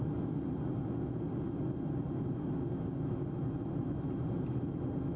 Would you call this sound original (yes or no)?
yes